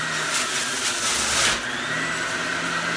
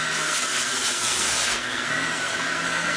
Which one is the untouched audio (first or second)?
first